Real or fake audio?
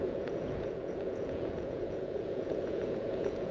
fake